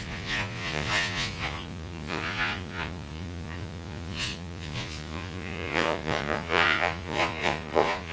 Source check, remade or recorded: remade